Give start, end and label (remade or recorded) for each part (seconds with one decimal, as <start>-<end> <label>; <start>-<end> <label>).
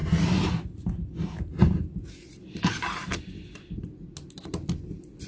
0.0-5.3 recorded